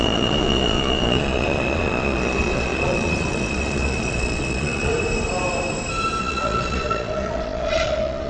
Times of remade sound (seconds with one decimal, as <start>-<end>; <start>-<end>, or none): 0.0-4.9; 6.2-8.3

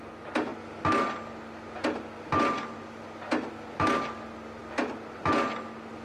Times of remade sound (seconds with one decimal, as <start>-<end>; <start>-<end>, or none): none

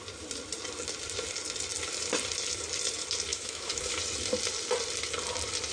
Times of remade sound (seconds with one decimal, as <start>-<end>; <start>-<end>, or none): 3.3-4.0

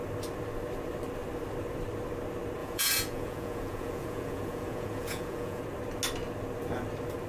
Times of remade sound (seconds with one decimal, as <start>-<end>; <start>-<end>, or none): 2.6-5.6

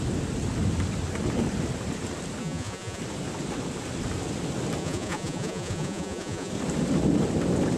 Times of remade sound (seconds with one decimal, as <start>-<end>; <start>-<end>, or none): 2.4-3.0; 4.8-6.5

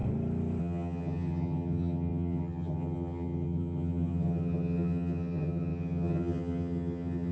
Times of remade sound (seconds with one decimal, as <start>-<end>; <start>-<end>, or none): 0.6-7.3

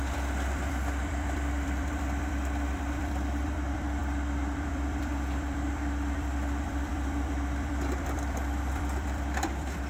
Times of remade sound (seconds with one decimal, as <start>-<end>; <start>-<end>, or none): 0.0-9.9